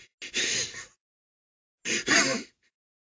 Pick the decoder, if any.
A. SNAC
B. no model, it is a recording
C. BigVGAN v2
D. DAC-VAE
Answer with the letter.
B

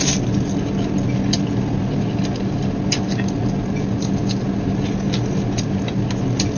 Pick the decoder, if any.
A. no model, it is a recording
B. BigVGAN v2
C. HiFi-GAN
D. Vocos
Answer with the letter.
A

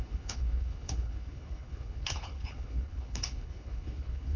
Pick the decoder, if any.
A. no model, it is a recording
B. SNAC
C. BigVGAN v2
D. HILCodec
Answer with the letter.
D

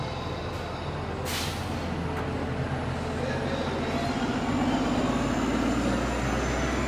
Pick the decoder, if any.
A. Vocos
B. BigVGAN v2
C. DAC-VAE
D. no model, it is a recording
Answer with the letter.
D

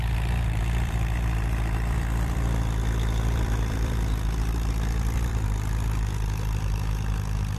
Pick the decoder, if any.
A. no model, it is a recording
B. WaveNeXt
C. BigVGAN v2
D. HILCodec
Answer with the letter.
C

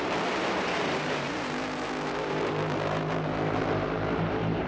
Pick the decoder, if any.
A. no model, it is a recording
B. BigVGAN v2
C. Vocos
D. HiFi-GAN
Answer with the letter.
B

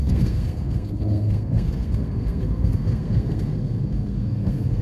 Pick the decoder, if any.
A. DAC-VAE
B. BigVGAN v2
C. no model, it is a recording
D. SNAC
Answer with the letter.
D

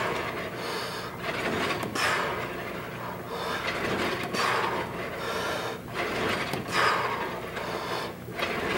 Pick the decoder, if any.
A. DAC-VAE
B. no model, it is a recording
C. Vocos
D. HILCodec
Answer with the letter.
B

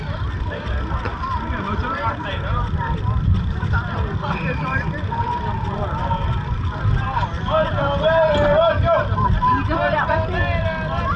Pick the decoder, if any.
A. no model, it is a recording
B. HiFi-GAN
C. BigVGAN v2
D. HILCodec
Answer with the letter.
A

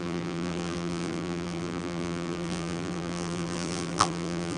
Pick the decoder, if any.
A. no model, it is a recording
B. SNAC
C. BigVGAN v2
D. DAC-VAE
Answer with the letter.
C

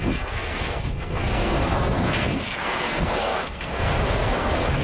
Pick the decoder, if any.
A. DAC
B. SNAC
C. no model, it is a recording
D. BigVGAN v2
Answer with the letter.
B